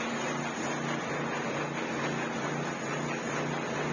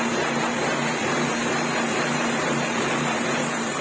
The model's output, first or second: second